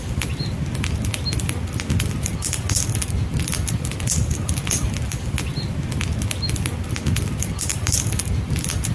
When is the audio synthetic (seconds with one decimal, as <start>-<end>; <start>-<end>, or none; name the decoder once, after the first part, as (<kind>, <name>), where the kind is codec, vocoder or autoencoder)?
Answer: 7.7-8.3 (vocoder, BigVGAN v2)